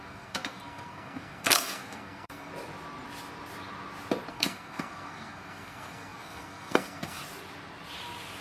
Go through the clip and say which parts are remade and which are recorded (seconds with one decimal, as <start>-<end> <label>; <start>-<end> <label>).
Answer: 0.0-2.5 remade; 2.5-4.3 recorded; 4.3-7.2 remade; 7.2-8.4 recorded

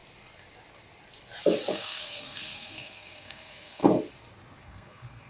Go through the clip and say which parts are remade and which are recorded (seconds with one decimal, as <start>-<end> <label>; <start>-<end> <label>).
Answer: 0.0-1.7 recorded; 1.7-3.8 remade; 3.8-4.6 recorded; 4.6-5.3 remade

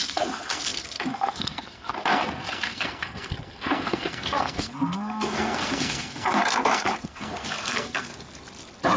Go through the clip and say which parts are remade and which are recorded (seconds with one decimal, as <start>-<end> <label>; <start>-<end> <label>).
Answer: 0.0-8.1 remade; 8.1-9.0 recorded

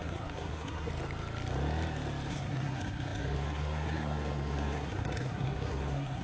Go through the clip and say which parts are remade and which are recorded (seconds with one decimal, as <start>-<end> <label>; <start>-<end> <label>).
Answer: 0.0-0.9 remade; 0.9-2.3 recorded; 2.3-6.2 remade

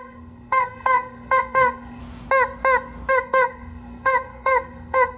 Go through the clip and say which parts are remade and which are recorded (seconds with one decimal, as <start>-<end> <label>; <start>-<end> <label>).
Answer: 0.0-2.0 remade; 2.0-3.1 recorded; 3.1-5.2 remade

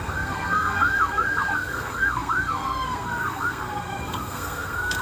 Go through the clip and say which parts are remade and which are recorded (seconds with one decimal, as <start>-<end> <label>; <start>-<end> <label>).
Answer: 0.0-5.0 remade